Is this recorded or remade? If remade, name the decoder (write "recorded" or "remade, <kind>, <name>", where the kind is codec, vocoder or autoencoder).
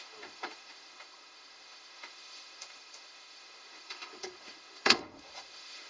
remade, autoencoder, DAC-VAE